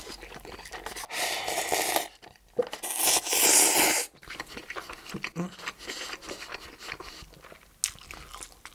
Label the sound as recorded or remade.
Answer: recorded